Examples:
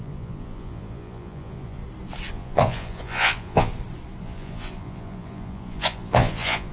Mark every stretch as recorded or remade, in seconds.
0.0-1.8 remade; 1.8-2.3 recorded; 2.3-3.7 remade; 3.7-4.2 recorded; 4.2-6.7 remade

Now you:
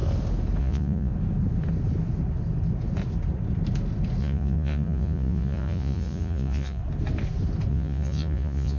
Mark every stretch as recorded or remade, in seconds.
0.0-0.6 recorded; 0.6-1.1 remade; 1.1-4.2 recorded; 4.2-6.8 remade; 6.8-7.7 recorded; 7.7-8.8 remade

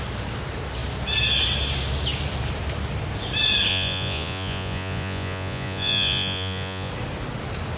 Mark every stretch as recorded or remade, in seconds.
0.0-3.7 recorded; 3.7-6.9 remade; 6.9-7.8 recorded

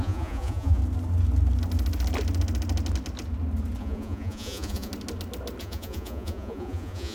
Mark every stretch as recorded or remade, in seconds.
0.0-0.8 remade; 0.8-3.8 recorded; 3.8-4.9 remade; 4.9-5.6 recorded; 5.6-7.1 remade

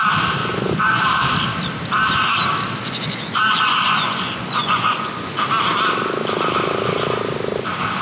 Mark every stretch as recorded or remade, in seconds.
0.0-0.4 recorded; 0.4-1.0 remade; 1.0-2.8 recorded; 2.8-5.3 remade; 5.3-8.0 recorded

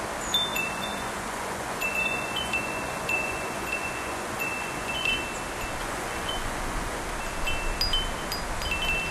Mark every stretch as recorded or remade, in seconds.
0.0-0.5 recorded; 0.5-5.2 remade; 5.2-5.8 recorded; 5.8-7.0 remade; 7.0-9.1 recorded